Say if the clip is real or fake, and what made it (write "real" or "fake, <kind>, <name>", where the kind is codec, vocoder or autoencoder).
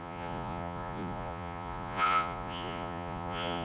fake, vocoder, Vocos